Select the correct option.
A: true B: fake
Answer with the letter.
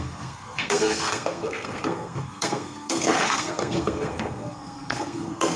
B